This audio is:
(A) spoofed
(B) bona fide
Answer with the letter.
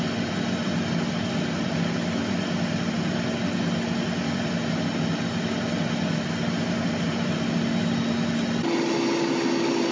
B